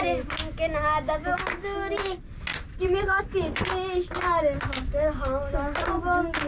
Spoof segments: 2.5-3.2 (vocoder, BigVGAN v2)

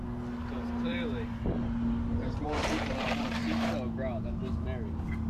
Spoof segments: 0.9-1.5 (vocoder, BigVGAN v2); 2.1-3.4

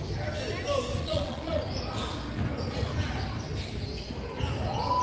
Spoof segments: 1.0-1.6 (vocoder, Vocos)

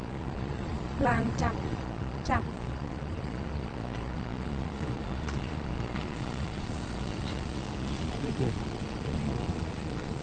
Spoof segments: 0.0-10.2 (vocoder, Vocos)

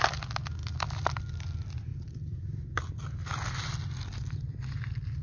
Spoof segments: none

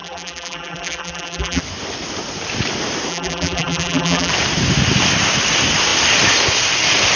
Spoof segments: 0.0-1.6 (vocoder, BigVGAN v2); 3.1-4.3

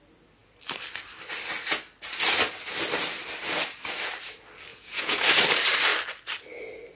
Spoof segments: 4.7-5.2 (vocoder, Vocos)